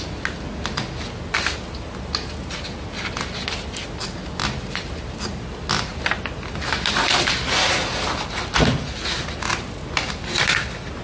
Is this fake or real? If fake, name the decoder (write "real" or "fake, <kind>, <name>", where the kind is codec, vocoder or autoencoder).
real